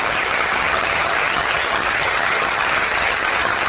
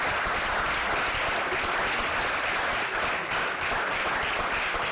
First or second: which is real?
second